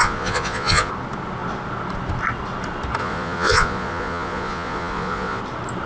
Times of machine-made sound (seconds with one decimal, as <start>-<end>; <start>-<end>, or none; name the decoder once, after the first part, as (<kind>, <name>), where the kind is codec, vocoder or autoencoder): 0.0-0.9 (vocoder, Vocos); 3.0-5.4